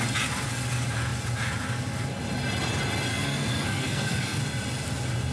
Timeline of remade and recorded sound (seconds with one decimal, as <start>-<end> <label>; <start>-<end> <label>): 0.0-3.1 recorded; 3.1-4.4 remade; 4.4-5.3 recorded